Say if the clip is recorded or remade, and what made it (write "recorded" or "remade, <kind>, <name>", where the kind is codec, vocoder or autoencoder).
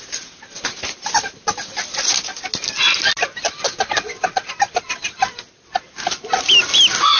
recorded